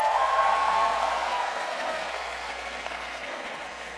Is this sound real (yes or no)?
no